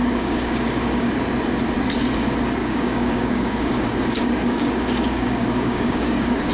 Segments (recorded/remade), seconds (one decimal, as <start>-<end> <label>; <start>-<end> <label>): 0.0-1.1 remade; 1.1-2.6 recorded; 2.6-6.5 remade